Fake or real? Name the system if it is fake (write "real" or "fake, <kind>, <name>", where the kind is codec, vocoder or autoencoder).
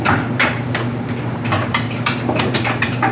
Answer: fake, vocoder, BigVGAN v2